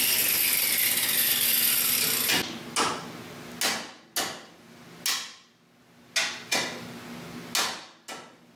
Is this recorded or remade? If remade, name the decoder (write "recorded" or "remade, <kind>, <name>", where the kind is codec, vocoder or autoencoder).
recorded